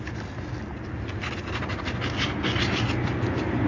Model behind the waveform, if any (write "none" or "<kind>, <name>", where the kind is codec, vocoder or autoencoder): none